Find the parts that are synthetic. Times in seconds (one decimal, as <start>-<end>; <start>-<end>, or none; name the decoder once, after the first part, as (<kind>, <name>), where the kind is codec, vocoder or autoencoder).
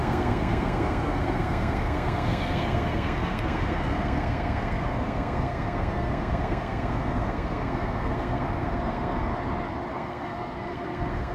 0.0-9.3 (codec, SNAC); 9.9-11.3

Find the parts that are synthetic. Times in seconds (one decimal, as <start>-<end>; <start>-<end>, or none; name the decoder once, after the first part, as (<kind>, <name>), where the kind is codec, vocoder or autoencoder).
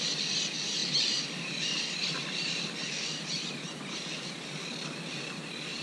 none